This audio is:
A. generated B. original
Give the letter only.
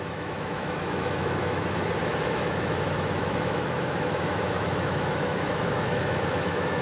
A